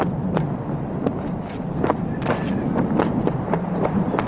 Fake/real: real